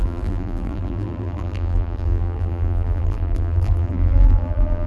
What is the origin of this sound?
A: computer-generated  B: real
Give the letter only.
A